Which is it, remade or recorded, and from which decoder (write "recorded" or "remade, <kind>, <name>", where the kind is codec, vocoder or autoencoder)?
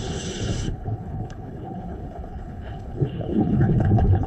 remade, codec, HILCodec